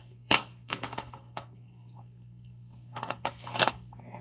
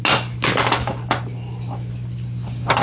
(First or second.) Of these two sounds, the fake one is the first